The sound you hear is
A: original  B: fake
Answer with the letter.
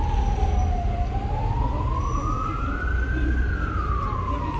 A